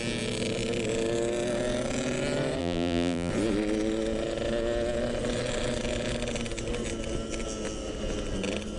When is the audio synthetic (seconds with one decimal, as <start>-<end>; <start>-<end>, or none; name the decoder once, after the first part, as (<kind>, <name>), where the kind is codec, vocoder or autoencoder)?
2.6-3.3 (vocoder, BigVGAN v2)